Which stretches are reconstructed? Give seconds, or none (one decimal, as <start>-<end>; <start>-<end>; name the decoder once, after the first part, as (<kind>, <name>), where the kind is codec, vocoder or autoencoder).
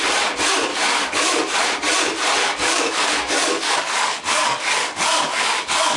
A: 0.7-1.6 (codec, DAC); 2.4-6.0